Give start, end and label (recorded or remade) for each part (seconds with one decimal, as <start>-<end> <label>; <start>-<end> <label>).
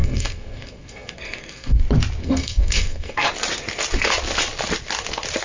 0.0-1.8 remade; 1.8-2.2 recorded; 2.2-3.3 remade; 3.3-5.4 recorded